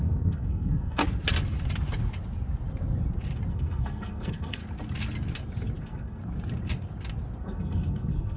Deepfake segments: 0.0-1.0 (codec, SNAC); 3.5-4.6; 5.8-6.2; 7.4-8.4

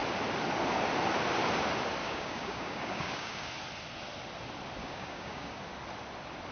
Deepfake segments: 2.0-3.5 (codec, DAC); 4.8-5.6